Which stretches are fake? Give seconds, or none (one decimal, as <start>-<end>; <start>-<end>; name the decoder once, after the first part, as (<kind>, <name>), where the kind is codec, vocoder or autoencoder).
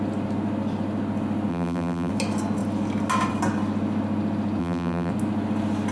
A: 1.5-2.1 (vocoder, BigVGAN v2); 4.6-5.1